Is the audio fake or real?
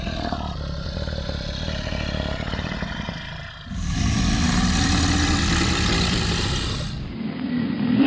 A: real